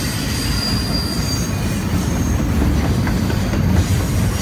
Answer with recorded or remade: recorded